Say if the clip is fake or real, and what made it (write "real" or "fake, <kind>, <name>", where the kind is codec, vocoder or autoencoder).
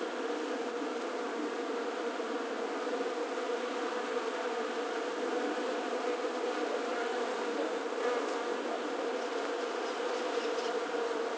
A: real